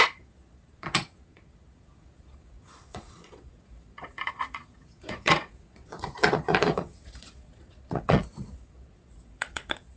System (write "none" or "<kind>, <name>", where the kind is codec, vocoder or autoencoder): vocoder, Vocos